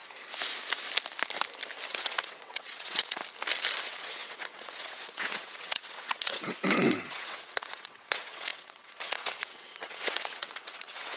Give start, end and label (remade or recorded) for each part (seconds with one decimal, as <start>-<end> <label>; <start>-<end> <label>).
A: 0.0-1.9 recorded; 1.9-3.2 remade; 3.2-3.8 recorded; 3.8-11.2 remade